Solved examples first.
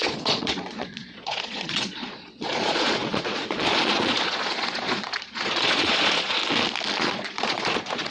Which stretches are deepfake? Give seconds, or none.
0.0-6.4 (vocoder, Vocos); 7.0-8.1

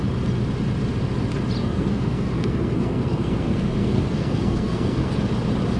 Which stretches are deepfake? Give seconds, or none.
1.6-5.1 (codec, SNAC)

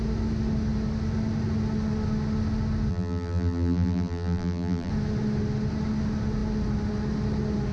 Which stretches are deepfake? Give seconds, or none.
2.9-4.9 (vocoder, BigVGAN v2)